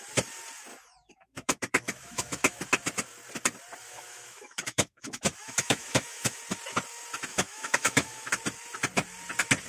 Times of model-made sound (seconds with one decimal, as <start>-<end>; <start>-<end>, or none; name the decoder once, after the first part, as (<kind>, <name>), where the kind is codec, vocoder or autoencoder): 0.7-2.6 (autoencoder, DAC-VAE); 3.8-6.4; 7.3-8.3